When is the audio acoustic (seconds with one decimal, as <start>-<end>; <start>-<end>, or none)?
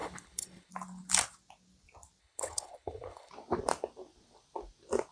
0.7-2.2; 3.3-5.1